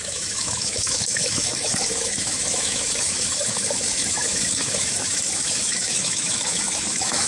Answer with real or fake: fake